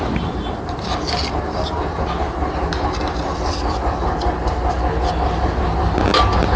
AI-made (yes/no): no